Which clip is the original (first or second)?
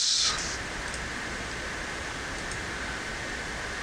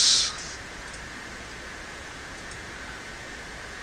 first